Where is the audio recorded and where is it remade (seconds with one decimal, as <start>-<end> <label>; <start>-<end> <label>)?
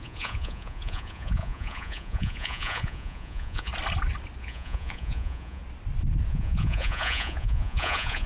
0.0-3.7 remade; 3.7-4.4 recorded; 4.4-5.6 remade; 5.6-6.3 recorded; 6.3-8.3 remade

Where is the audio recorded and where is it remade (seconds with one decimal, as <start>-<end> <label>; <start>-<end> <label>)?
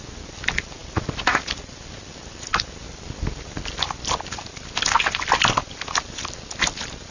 0.0-7.1 recorded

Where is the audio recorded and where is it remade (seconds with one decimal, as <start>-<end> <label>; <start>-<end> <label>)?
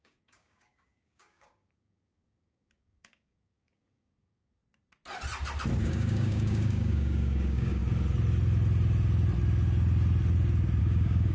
0.0-4.6 remade; 4.6-5.8 recorded; 5.8-7.8 remade; 7.8-10.8 recorded; 10.8-11.3 remade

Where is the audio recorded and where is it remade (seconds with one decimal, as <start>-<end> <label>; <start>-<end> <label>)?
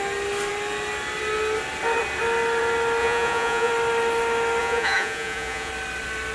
0.0-3.0 recorded; 3.0-3.7 remade; 3.7-4.6 recorded; 4.6-5.7 remade; 5.7-6.3 recorded